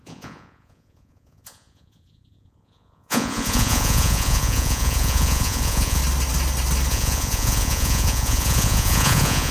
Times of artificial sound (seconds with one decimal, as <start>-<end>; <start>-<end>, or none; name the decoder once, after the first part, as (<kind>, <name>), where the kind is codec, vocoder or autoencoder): 0.0-6.0 (vocoder, Vocos); 6.9-9.5

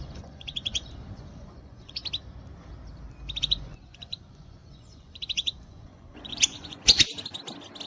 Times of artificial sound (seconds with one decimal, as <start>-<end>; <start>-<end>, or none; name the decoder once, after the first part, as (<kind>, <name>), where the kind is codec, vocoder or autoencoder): 0.0-2.0 (vocoder, Vocos); 3.4-7.1

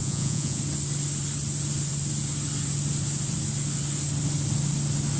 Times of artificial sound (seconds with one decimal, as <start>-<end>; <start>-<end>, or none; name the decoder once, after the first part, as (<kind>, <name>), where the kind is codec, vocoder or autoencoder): 0.0-0.6 (vocoder, Vocos)

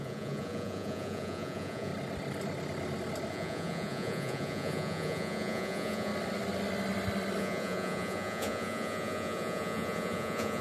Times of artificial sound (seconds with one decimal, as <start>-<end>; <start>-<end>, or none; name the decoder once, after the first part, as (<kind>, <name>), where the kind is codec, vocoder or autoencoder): 0.0-1.9 (vocoder, Vocos); 3.3-6.1; 7.4-10.6

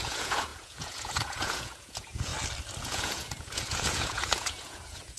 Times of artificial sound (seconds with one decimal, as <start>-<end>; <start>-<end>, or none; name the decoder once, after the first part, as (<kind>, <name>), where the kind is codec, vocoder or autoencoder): 0.0-2.3 (vocoder, Vocos); 2.8-5.2

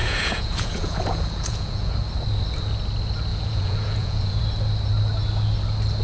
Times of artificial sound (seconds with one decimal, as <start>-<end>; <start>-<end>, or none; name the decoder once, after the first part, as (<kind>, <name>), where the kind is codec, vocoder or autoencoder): 0.0-1.9 (vocoder, Vocos); 3.3-4.4

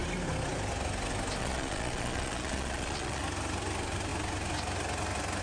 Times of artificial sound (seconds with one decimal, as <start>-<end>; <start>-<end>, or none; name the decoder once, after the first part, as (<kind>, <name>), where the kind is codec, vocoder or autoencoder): 1.4-3.2 (vocoder, Vocos)

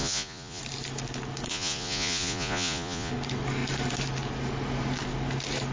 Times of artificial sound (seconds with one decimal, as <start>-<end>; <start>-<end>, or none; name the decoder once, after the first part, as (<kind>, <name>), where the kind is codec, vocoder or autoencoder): 0.0-0.6 (vocoder, Vocos); 1.5-3.1